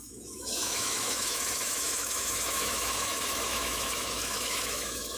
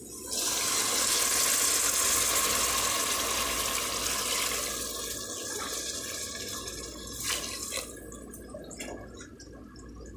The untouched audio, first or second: second